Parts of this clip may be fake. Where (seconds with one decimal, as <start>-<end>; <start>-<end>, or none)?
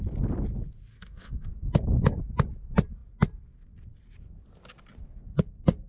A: 0.9-1.5